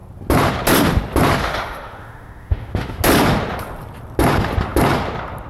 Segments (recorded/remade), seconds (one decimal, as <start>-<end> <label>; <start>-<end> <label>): 0.0-1.4 recorded; 1.4-3.0 remade; 3.0-5.5 recorded